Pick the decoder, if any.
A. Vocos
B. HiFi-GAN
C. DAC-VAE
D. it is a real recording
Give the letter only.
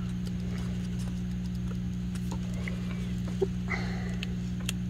D